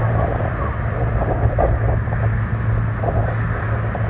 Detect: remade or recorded recorded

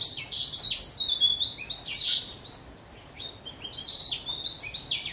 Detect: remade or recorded recorded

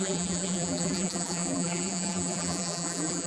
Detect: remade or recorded remade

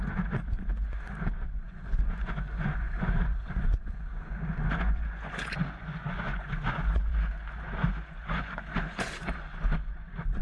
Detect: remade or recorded remade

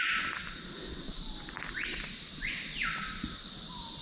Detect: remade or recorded recorded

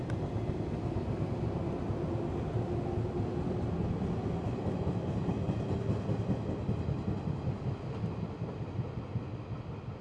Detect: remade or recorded recorded